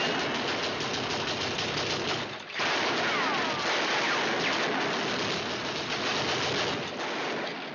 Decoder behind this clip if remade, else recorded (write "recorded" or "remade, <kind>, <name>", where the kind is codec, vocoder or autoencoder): recorded